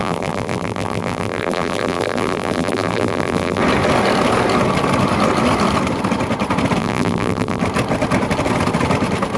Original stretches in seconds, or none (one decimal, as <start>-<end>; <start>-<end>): 3.6-6.8; 7.6-9.4